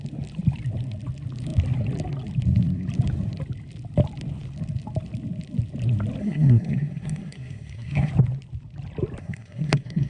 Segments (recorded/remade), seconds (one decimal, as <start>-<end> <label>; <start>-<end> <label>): 0.0-6.2 recorded; 6.2-8.1 remade; 8.1-9.2 recorded; 9.2-10.1 remade